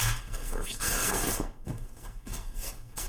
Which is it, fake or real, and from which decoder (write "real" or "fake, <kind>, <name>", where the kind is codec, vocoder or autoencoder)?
fake, codec, SNAC